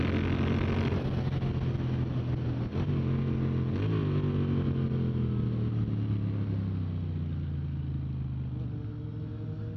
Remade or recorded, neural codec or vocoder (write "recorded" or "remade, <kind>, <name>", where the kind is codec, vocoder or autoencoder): recorded